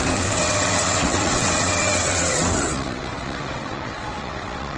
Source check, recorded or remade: remade